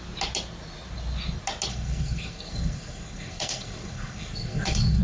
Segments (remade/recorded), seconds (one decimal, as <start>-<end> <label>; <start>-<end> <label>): 0.0-1.7 recorded; 1.7-5.0 remade